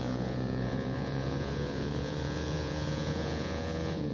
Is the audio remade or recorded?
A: remade